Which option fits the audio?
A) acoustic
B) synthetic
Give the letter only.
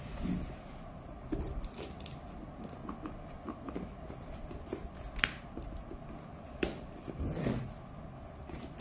A